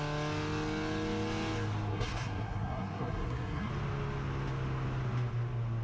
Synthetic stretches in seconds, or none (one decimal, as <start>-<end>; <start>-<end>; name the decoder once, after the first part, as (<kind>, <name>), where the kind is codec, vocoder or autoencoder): 1.9-3.7 (codec, SNAC)